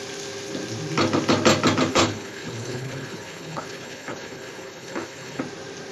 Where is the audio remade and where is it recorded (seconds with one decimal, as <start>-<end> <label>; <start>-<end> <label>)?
0.0-1.9 recorded; 1.9-5.4 remade; 5.4-5.9 recorded